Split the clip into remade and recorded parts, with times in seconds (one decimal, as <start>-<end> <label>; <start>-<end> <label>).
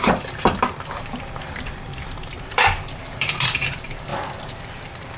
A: 0.0-4.1 remade; 4.1-4.6 recorded; 4.6-5.2 remade